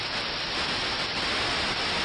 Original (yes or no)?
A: yes